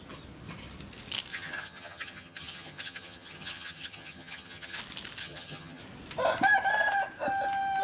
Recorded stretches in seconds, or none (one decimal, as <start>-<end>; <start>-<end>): 0.0-1.3; 4.8-5.2; 5.8-7.8

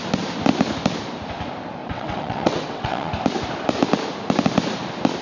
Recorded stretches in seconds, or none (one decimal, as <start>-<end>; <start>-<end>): 0.0-1.8; 3.1-5.2

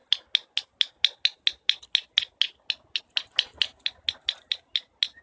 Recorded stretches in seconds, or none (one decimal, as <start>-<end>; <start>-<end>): 0.0-5.2